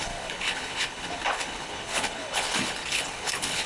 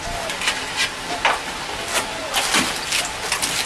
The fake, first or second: first